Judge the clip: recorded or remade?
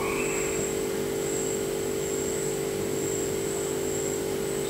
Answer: recorded